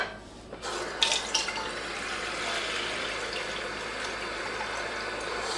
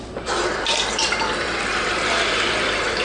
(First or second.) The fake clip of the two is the second